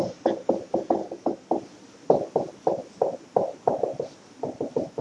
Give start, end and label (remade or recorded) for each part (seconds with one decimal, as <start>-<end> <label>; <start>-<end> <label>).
0.0-1.0 recorded; 1.0-1.5 remade; 1.5-5.0 recorded